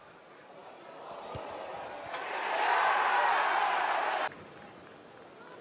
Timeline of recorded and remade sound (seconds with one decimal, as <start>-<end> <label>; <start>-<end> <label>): 0.0-5.6 recorded